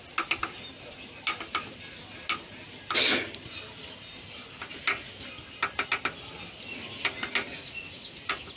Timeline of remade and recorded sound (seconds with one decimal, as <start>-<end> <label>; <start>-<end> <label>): 0.0-7.5 recorded; 7.5-8.2 remade; 8.2-8.6 recorded